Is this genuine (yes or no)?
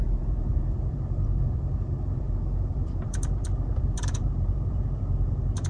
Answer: no